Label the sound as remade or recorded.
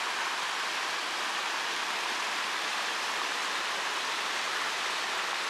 recorded